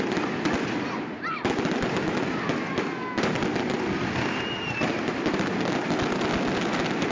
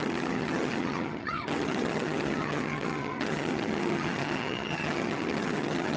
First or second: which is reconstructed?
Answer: second